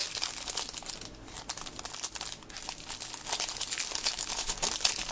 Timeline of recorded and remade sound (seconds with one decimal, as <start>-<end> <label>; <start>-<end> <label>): 0.0-4.0 recorded; 4.0-4.5 remade; 4.5-5.1 recorded